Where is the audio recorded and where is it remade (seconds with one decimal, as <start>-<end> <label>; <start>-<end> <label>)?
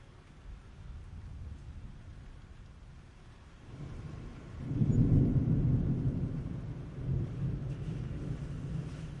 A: 0.0-2.1 recorded; 2.1-5.5 remade; 5.5-9.2 recorded